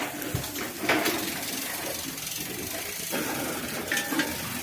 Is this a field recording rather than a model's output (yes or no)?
yes